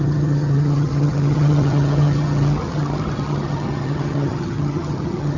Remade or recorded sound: remade